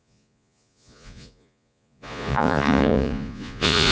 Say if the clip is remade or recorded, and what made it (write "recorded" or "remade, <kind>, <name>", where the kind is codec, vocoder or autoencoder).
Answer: remade, vocoder, Vocos